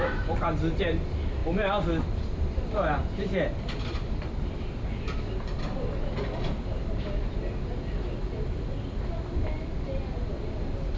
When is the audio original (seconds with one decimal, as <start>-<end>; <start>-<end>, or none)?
0.0-11.0